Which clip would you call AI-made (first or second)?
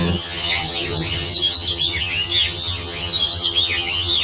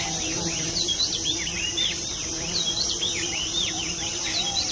first